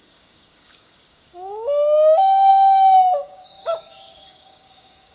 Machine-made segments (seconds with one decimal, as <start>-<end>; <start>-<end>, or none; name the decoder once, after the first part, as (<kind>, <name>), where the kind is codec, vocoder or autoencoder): 0.0-5.1 (codec, DAC)